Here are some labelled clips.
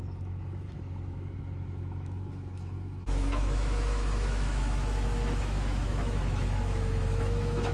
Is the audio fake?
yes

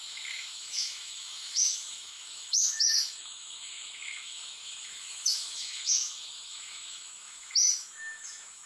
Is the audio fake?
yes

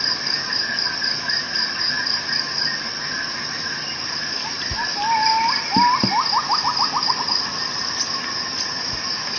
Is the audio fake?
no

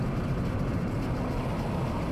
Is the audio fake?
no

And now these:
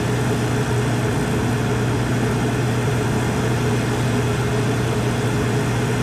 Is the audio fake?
no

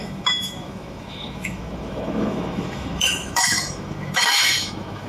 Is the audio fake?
yes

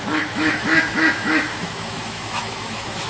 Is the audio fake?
yes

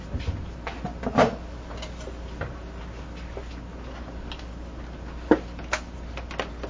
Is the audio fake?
no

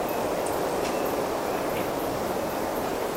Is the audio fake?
no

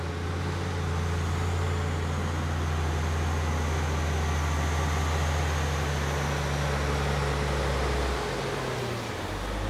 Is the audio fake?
no